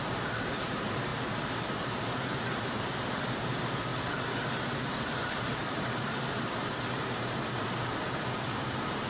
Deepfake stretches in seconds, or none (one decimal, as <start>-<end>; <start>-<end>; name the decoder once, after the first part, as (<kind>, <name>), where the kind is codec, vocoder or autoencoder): 0.0-9.1 (vocoder, BigVGAN v2)